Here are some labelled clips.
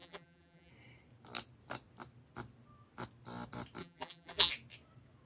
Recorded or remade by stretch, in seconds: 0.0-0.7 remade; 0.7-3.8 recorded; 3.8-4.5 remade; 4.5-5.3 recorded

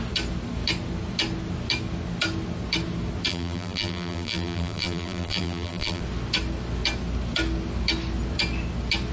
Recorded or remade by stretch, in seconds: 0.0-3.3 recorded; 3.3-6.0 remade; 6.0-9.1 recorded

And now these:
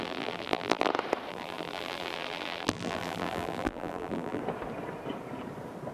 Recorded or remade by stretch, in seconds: 0.0-0.9 remade; 0.9-1.3 recorded; 1.3-4.4 remade; 4.4-5.9 recorded

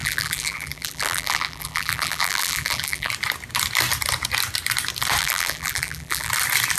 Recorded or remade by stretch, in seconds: 0.0-3.1 remade; 3.1-5.2 recorded; 5.2-6.3 remade; 6.3-6.8 recorded

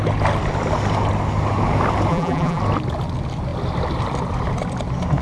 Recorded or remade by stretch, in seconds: 0.0-2.1 recorded; 2.1-2.6 remade; 2.6-5.2 recorded

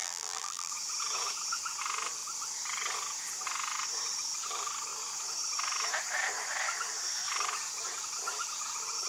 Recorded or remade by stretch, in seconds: 0.0-0.7 remade; 0.7-9.1 recorded